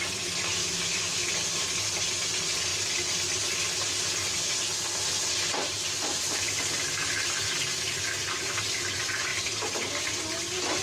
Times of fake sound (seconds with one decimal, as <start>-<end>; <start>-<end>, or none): 0.6-1.2